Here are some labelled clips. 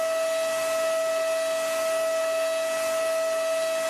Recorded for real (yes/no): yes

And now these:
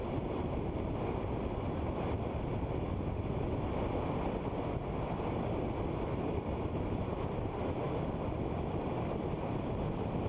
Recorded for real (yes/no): yes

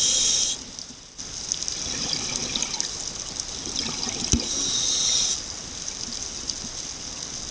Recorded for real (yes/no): yes